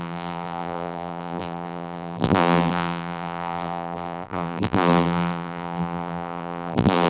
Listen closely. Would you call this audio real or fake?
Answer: fake